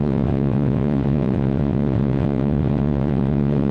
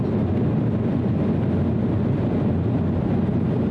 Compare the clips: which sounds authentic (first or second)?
second